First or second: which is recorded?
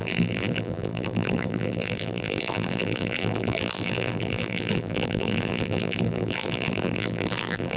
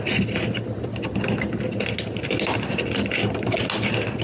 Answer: second